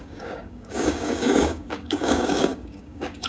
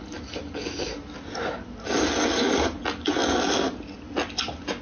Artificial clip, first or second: first